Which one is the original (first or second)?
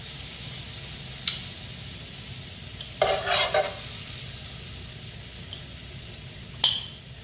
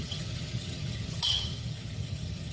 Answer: first